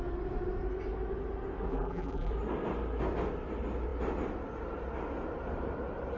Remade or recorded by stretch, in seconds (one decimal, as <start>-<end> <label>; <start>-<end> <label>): 0.0-1.7 recorded; 1.7-2.3 remade; 2.3-6.2 recorded